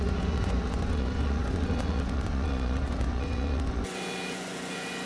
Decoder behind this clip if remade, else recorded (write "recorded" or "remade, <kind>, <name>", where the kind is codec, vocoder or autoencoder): remade, vocoder, Vocos